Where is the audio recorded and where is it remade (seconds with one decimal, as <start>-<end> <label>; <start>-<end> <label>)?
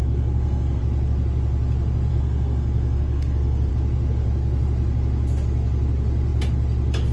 0.0-0.8 remade; 0.8-2.1 recorded; 2.1-3.7 remade; 3.7-7.1 recorded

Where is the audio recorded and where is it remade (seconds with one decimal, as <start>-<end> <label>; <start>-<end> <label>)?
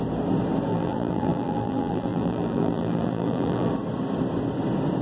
0.0-0.7 recorded; 0.7-3.7 remade; 3.7-5.0 recorded